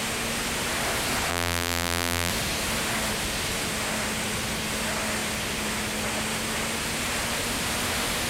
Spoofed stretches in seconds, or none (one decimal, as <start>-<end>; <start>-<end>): 1.3-2.3